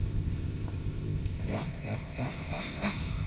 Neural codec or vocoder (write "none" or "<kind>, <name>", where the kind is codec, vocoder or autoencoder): codec, ZipCodec